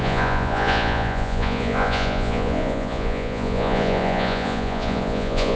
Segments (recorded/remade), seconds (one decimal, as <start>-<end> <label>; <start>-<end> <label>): 0.0-5.6 remade